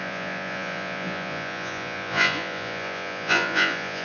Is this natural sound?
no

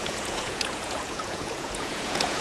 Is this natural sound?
no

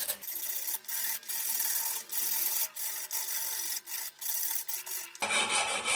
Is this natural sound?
yes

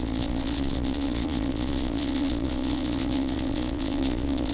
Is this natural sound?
no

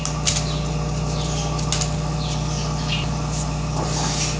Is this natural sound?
yes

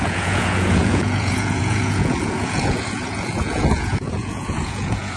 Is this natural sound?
no